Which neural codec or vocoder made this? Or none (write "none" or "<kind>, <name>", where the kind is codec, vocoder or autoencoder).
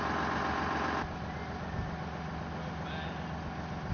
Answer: none